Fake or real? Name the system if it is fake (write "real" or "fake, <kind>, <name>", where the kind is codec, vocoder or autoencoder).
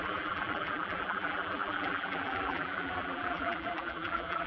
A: fake, vocoder, BigVGAN v2